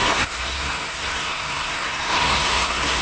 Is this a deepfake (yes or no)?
yes